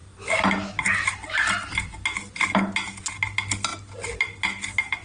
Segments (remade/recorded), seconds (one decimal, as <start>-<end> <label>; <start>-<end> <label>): 0.0-5.0 recorded